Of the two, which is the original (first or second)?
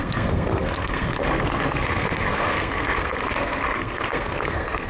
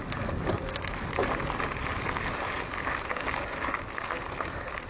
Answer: second